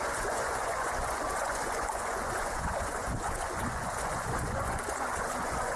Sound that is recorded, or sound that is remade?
remade